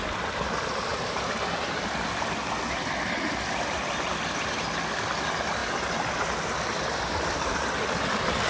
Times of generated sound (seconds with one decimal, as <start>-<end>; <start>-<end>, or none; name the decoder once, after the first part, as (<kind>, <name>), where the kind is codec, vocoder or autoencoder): none